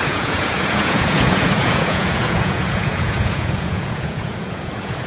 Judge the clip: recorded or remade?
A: remade